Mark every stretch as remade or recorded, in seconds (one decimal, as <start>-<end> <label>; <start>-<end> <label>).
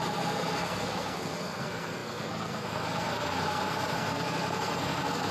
0.0-5.3 remade